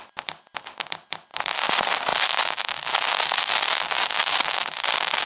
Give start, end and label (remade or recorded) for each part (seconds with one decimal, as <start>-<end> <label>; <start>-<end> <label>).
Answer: 0.0-2.1 remade; 2.1-5.3 recorded